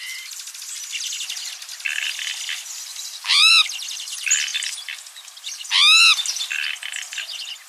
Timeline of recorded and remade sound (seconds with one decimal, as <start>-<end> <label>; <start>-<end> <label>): 0.0-2.9 recorded; 2.9-3.5 remade; 3.5-4.5 recorded; 4.5-5.6 remade; 5.6-7.7 recorded